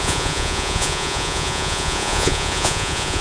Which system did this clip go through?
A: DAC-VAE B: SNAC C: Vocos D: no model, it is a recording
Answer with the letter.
C